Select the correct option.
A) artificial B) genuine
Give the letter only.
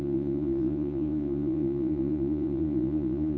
A